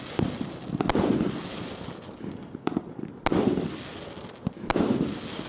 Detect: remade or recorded recorded